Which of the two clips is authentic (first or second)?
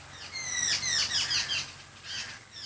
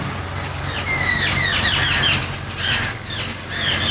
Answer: first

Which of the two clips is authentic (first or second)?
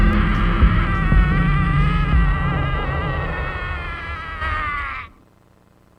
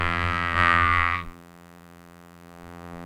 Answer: first